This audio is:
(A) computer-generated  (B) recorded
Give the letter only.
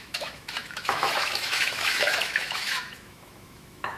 A